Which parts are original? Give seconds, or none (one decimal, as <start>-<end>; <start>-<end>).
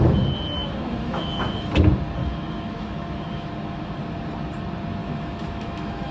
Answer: 0.0-0.6; 1.5-2.2; 4.0-5.0